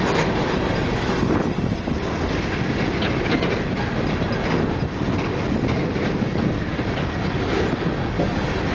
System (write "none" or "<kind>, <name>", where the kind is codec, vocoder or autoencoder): none